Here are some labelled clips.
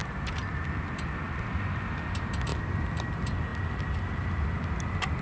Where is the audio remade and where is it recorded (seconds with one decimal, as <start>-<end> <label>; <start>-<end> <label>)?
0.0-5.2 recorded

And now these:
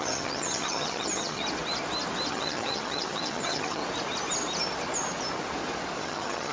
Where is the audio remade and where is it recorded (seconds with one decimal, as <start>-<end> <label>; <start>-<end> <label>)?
0.0-1.4 remade; 1.4-2.3 recorded; 2.3-3.8 remade; 3.8-6.0 recorded; 6.0-6.5 remade

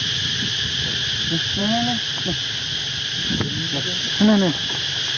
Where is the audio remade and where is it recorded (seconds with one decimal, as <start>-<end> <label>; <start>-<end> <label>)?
0.0-5.2 recorded

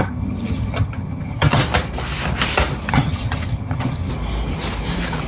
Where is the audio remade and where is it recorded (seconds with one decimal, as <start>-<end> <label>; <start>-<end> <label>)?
0.0-1.6 remade; 1.6-2.9 recorded; 2.9-4.1 remade; 4.1-5.3 recorded

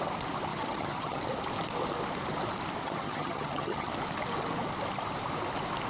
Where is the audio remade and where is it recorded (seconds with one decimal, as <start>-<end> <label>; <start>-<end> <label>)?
0.0-0.5 recorded; 0.5-1.2 remade; 1.2-2.8 recorded; 2.8-3.9 remade; 3.9-5.9 recorded